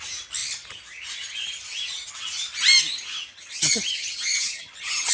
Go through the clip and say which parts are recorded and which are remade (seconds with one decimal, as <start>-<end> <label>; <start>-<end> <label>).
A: 0.0-3.3 recorded; 3.3-5.1 remade